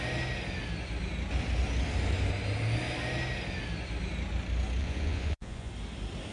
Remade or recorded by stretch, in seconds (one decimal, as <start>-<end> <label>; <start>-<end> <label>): 0.0-4.8 recorded; 4.8-5.7 remade; 5.7-6.3 recorded